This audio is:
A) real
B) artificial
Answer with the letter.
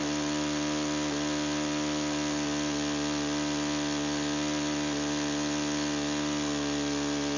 A